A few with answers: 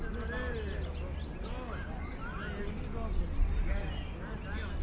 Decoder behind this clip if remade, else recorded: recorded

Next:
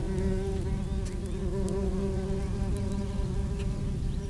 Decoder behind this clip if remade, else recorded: recorded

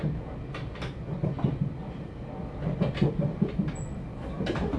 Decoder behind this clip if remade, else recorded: recorded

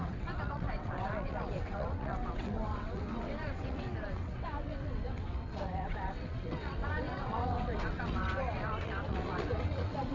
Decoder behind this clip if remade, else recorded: remade, vocoder, WaveNeXt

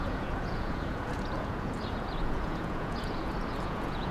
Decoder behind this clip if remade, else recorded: remade, vocoder, Vocos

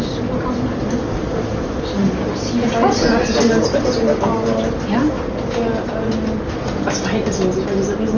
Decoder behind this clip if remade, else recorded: recorded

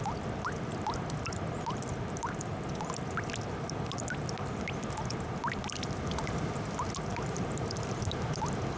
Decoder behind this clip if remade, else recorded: recorded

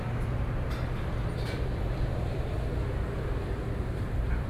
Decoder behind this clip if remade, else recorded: remade, vocoder, BigVGAN v2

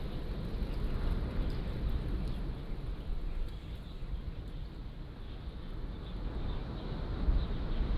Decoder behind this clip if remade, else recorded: recorded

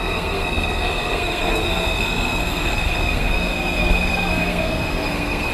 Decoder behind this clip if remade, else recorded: remade, codec, SNAC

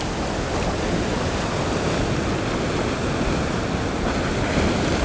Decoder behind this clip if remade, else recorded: recorded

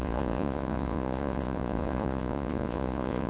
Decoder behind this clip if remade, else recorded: remade, vocoder, Vocos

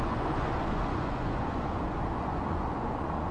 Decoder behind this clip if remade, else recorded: remade, vocoder, Vocos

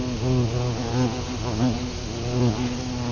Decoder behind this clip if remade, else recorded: recorded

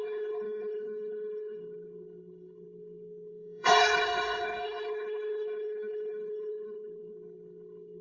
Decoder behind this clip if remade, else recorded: remade, codec, HILCodec